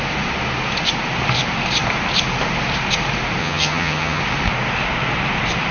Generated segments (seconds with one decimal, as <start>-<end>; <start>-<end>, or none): 3.4-4.2